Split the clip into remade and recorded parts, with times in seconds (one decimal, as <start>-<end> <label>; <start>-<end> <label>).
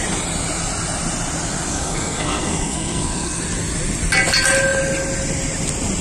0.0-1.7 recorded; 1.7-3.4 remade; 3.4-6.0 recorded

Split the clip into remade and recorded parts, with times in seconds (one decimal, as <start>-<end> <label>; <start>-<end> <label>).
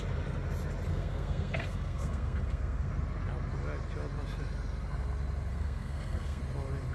0.0-0.9 recorded; 0.9-2.9 remade; 2.9-5.5 recorded; 5.5-6.4 remade; 6.4-6.9 recorded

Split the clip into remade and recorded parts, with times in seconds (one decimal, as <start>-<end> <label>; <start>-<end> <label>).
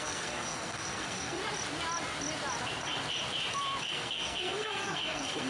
0.0-1.4 remade; 1.4-3.8 recorded; 3.8-5.5 remade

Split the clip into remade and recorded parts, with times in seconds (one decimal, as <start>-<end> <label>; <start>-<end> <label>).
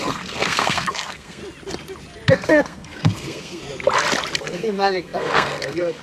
0.0-1.4 remade; 1.4-2.3 recorded; 2.3-3.6 remade; 3.6-4.4 recorded; 4.4-6.0 remade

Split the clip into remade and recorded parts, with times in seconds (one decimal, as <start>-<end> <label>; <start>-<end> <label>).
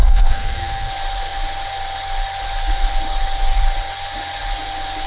0.0-0.9 remade; 0.9-5.1 recorded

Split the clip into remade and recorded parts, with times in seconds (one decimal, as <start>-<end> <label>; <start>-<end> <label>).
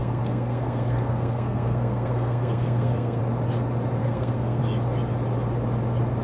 0.0-3.2 remade; 3.2-4.0 recorded; 4.0-4.6 remade; 4.6-6.2 recorded